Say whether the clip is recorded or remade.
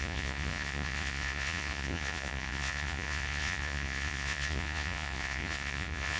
remade